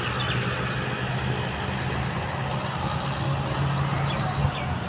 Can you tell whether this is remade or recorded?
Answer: recorded